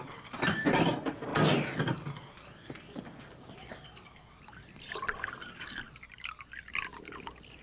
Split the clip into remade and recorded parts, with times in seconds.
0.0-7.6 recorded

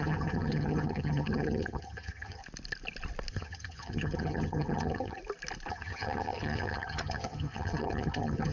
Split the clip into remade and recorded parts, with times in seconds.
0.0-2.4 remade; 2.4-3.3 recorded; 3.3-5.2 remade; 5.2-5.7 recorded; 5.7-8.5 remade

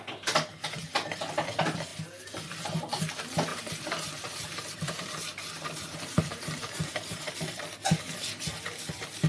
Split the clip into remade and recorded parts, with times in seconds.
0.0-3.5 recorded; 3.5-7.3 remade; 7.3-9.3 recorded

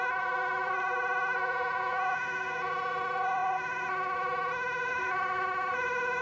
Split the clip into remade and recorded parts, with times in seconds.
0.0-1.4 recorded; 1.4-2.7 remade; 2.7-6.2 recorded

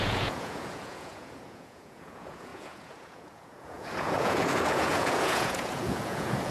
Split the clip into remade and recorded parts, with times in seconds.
0.0-6.5 remade

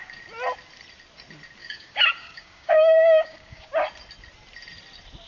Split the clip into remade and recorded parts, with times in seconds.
0.0-1.6 recorded; 1.6-3.7 remade; 3.7-5.3 recorded